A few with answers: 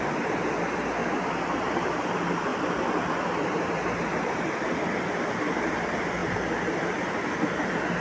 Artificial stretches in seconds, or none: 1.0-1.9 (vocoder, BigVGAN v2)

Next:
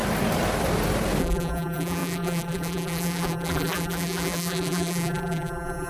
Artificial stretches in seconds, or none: 1.2-5.9 (vocoder, BigVGAN v2)

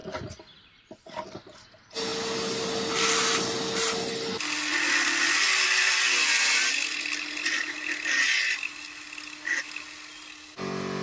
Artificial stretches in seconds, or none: none